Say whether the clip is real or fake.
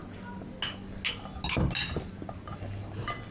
real